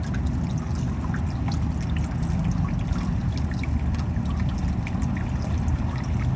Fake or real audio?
real